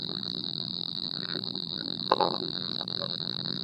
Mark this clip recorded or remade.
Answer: remade